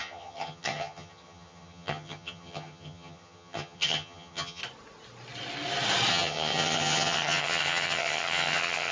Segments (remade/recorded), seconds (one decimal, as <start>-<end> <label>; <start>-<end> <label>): 0.0-4.6 remade; 4.6-6.1 recorded; 6.1-8.9 remade